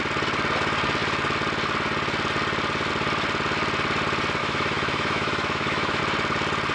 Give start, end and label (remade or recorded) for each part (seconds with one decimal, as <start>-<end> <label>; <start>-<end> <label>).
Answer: 0.0-4.4 recorded; 4.4-6.0 remade; 6.0-6.7 recorded